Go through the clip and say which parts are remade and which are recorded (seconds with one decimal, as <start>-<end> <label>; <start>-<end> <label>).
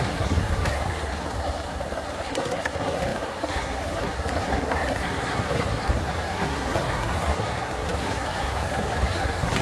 0.0-9.6 remade